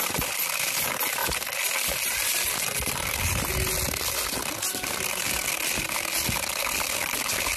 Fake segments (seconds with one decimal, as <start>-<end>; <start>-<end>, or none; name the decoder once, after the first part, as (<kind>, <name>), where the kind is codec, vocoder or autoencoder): none